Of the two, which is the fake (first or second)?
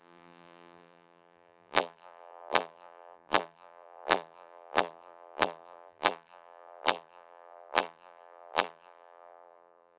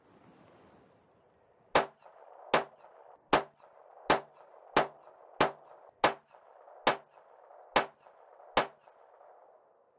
first